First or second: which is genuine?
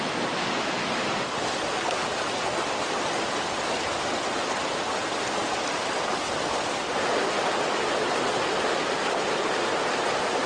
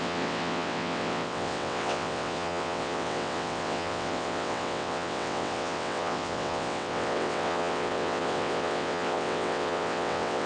first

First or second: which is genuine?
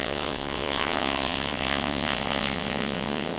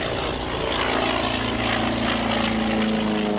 second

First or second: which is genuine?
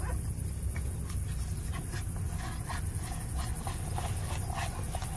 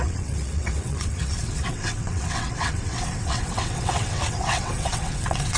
first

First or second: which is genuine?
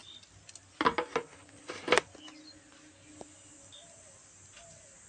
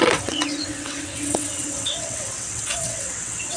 first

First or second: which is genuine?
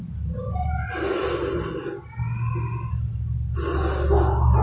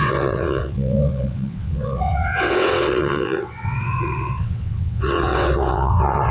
first